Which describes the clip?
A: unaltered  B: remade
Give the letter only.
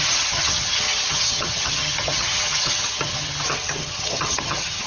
B